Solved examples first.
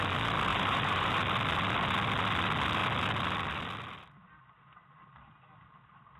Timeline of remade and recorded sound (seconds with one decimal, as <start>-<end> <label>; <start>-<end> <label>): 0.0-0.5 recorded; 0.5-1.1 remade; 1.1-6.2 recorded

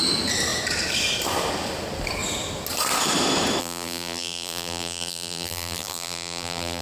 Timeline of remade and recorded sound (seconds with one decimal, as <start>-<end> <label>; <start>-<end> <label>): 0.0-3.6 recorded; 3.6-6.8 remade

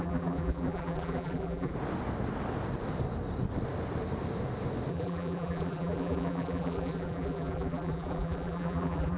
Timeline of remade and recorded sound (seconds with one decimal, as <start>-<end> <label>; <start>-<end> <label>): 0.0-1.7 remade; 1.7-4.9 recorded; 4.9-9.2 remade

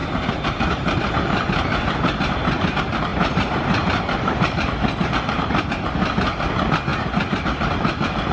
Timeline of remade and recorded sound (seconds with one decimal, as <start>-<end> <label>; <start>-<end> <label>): 0.0-1.1 remade; 1.1-3.1 recorded; 3.1-5.7 remade; 5.7-6.9 recorded; 6.9-7.8 remade; 7.8-8.3 recorded

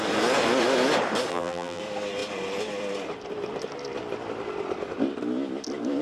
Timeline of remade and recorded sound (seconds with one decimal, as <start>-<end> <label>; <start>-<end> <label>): 0.0-1.3 recorded; 1.3-1.8 remade; 1.8-6.0 recorded

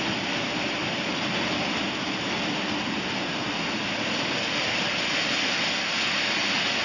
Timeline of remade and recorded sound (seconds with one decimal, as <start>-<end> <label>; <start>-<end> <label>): 0.0-6.8 recorded

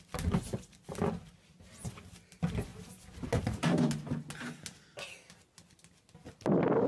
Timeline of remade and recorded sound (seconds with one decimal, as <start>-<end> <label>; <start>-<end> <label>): 0.0-6.9 recorded

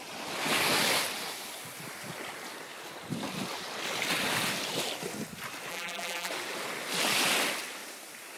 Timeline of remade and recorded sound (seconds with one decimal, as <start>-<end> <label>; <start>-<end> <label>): 0.0-5.7 recorded; 5.7-6.3 remade; 6.3-8.4 recorded